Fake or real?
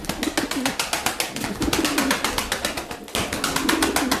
real